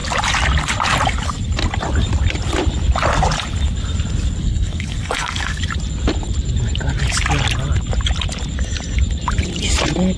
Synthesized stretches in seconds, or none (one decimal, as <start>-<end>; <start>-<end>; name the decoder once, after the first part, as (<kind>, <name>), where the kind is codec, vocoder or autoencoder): 4.4-5.6 (codec, SNAC)